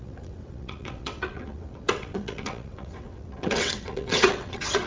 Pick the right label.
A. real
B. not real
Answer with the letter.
B